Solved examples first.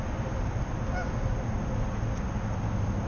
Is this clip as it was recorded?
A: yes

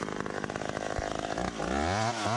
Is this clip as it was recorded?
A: yes